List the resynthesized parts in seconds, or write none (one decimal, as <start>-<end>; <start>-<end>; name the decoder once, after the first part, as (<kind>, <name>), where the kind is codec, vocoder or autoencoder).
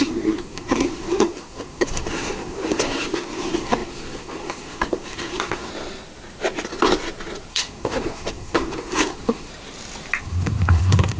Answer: 0.0-5.7 (codec, SNAC); 7.5-9.5; 10.2-11.2